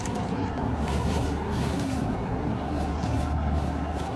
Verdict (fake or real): fake